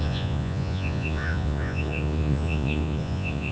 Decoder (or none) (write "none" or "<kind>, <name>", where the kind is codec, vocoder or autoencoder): vocoder, Vocos